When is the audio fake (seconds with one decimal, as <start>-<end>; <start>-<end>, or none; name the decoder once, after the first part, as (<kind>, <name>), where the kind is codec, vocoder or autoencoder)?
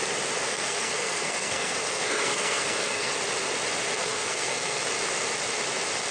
0.4-3.1 (codec, SNAC); 4.0-4.8